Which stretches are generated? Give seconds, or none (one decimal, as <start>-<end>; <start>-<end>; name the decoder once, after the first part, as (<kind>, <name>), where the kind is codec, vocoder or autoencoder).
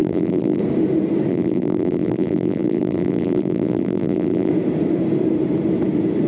0.0-0.6 (vocoder, BigVGAN v2); 1.3-4.5